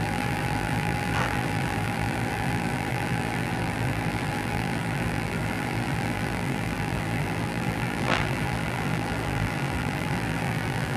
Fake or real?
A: fake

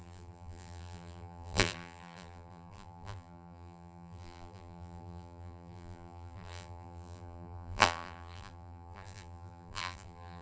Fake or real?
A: fake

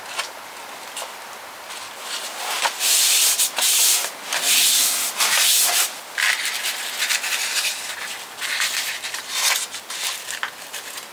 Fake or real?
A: real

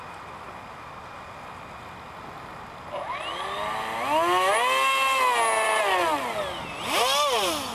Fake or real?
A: real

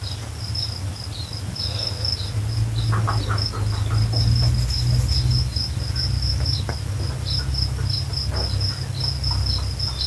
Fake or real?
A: real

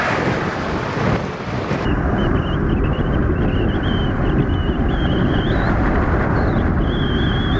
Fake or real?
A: real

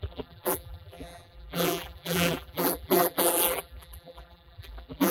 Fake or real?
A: fake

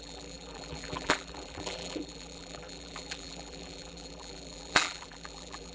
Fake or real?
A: fake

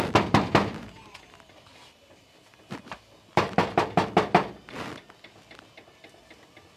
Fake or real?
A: real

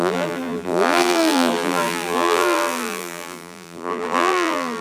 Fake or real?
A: fake